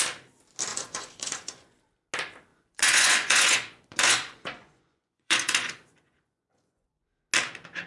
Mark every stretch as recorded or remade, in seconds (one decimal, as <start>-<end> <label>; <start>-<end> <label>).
0.0-0.7 recorded; 0.7-1.8 remade; 1.8-2.5 recorded; 2.5-7.1 remade; 7.1-7.9 recorded